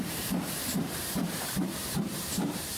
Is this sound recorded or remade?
remade